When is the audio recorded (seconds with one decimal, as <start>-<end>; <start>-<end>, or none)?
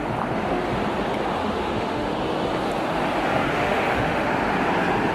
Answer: 0.0-1.4; 2.1-3.5; 4.3-5.1